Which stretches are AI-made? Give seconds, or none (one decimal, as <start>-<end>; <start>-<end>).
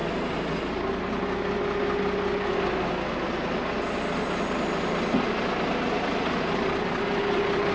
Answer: 0.0-0.5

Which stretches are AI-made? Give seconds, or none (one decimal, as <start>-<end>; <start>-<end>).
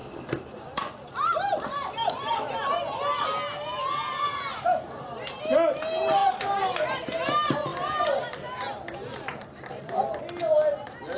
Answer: 0.0-0.8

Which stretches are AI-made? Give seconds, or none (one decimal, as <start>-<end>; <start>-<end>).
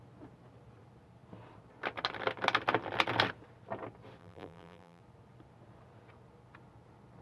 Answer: 4.2-5.0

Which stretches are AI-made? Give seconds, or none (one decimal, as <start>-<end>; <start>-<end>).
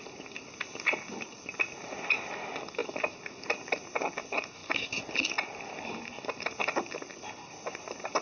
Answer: none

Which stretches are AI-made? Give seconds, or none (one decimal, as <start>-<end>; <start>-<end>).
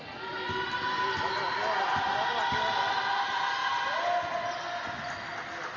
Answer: none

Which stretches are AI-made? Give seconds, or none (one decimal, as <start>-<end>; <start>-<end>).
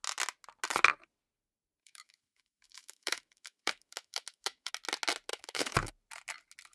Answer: 1.8-4.7; 5.3-5.9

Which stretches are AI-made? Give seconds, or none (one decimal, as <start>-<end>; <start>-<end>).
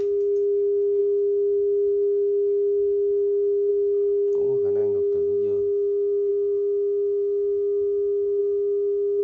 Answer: none